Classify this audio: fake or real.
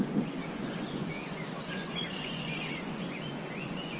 fake